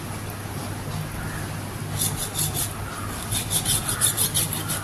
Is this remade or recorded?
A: recorded